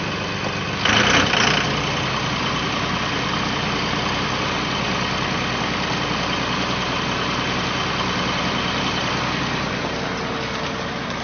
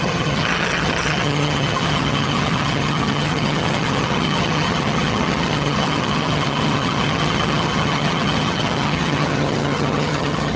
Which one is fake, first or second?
second